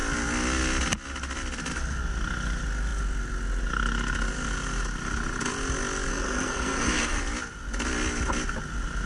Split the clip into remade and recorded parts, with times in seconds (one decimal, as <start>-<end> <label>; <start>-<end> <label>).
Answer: 0.0-6.1 recorded; 6.1-7.2 remade; 7.2-9.1 recorded